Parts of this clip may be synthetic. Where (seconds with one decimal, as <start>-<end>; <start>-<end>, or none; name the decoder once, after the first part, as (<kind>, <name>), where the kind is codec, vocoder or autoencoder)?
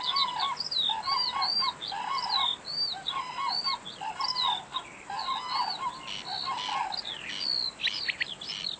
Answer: none